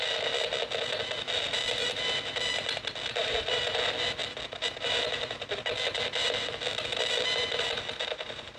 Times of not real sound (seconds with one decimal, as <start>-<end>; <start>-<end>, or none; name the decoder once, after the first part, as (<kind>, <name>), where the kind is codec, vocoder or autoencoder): none